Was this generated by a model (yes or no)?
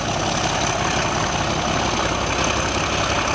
no